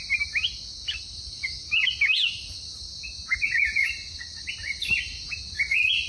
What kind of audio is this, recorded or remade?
recorded